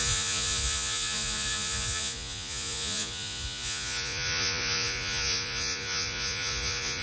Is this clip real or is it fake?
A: fake